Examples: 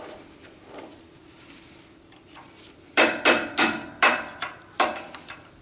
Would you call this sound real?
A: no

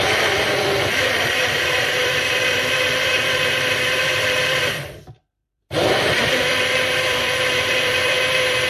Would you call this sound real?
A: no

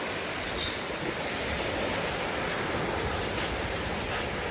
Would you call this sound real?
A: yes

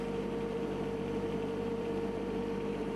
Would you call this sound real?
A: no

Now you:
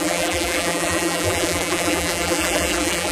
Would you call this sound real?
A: no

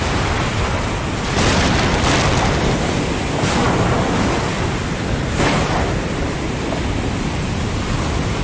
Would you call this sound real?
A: yes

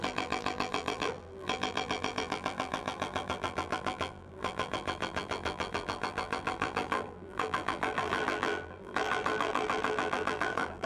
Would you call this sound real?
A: no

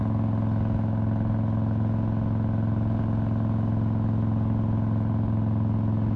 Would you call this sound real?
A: yes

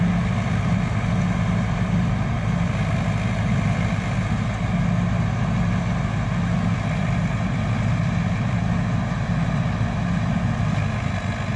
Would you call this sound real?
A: yes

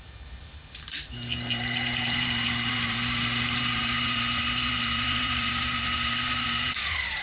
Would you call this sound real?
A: no